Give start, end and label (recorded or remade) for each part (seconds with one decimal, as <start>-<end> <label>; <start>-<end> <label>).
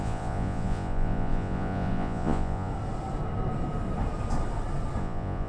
0.0-2.7 remade; 2.7-5.0 recorded; 5.0-5.5 remade